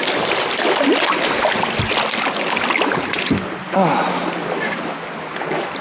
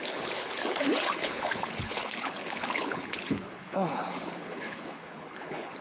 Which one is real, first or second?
first